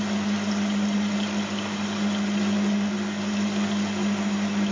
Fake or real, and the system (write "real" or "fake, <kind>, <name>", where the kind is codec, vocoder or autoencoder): real